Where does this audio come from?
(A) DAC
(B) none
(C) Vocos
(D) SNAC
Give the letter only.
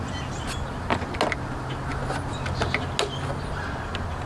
B